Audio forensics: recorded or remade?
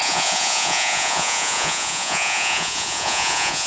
remade